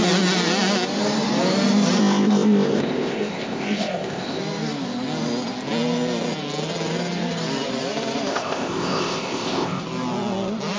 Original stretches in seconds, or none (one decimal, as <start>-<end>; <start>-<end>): 0.0-2.0; 4.4-8.3; 9.8-10.8